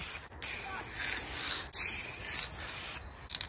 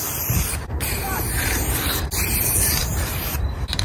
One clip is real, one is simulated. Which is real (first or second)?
first